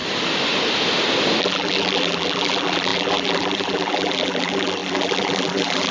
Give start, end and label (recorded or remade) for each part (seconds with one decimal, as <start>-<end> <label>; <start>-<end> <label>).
0.0-1.4 recorded; 1.4-5.9 remade